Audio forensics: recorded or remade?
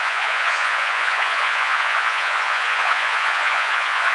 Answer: remade